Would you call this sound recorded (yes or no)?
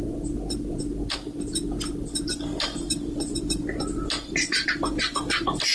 yes